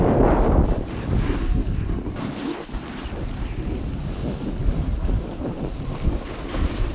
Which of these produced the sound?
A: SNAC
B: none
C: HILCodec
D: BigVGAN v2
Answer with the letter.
B